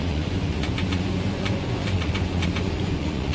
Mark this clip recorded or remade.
remade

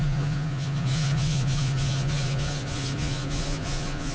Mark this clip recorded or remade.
remade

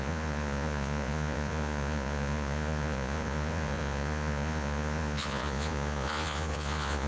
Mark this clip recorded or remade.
remade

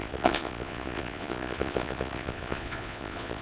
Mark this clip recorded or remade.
remade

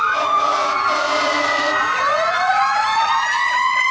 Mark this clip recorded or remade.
remade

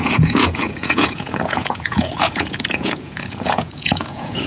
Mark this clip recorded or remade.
remade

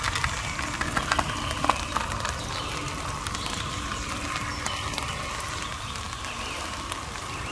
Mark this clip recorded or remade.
recorded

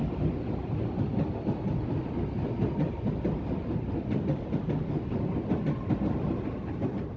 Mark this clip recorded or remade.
recorded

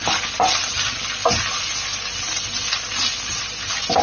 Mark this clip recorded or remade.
recorded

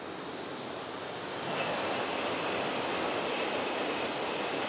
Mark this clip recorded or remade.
recorded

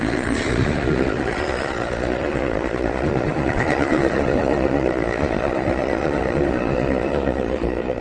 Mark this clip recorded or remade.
remade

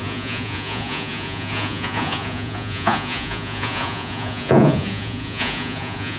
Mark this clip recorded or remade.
remade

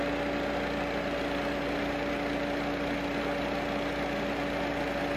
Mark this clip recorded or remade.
recorded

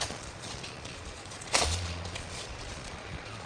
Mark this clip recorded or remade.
remade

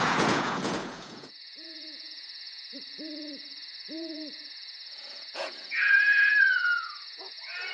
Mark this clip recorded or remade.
remade